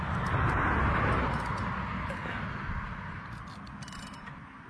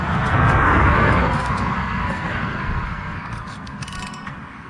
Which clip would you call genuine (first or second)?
first